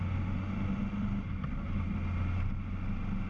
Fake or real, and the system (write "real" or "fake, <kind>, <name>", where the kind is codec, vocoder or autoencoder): real